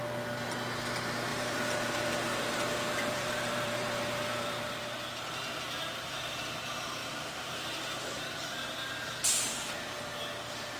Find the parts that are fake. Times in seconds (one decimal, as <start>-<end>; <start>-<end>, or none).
1.3-4.8; 7.0-8.2